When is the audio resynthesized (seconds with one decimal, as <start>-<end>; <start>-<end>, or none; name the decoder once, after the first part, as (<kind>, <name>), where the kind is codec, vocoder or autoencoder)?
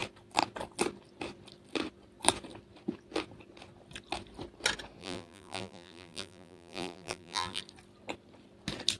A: 5.0-7.6 (vocoder, BigVGAN v2)